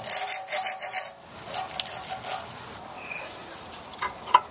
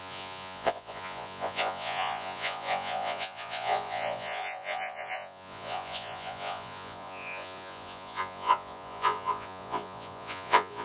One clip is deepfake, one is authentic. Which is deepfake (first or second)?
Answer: second